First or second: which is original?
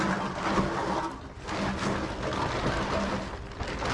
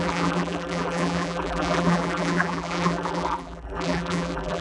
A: first